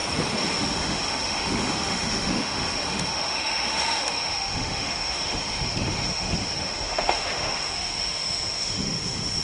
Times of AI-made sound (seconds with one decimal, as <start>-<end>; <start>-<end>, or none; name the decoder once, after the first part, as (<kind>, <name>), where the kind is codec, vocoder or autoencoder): 0.6-9.4 (autoencoder, DAC-VAE)